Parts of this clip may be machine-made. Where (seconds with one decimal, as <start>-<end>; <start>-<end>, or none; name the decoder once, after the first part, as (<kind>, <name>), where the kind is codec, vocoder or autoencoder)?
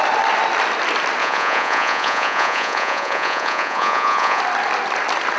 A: 1.2-4.4 (vocoder, Vocos)